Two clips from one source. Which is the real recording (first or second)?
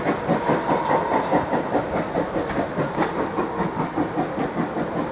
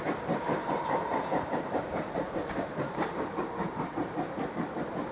first